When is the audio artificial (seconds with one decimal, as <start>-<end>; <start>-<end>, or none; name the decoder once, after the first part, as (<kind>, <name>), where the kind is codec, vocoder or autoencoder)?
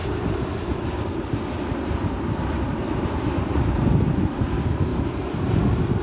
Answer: 0.0-3.6 (vocoder, BigVGAN v2); 4.9-5.5